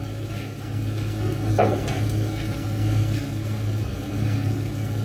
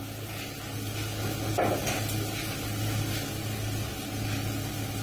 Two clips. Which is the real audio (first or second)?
second